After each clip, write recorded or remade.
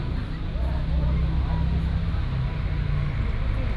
recorded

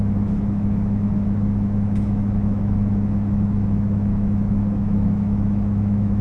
remade